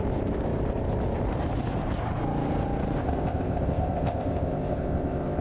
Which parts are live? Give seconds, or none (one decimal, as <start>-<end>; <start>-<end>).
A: 0.0-3.0